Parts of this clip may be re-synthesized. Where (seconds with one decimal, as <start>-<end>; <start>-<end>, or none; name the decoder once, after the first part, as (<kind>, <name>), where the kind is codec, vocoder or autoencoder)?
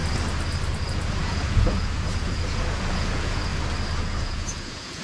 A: 0.7-3.5 (vocoder, Vocos); 4.0-5.0